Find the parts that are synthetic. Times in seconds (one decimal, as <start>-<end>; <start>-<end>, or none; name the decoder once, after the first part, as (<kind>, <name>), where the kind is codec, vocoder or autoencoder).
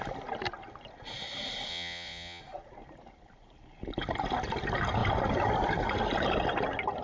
1.7-2.4 (vocoder, Vocos)